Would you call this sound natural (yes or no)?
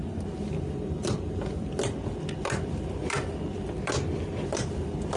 no